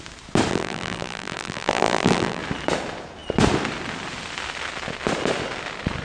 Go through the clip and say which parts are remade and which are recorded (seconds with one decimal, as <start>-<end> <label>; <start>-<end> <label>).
0.0-0.5 recorded; 0.5-2.4 remade; 2.4-6.0 recorded